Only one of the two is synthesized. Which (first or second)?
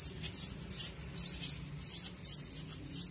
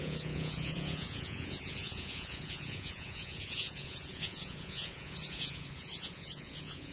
second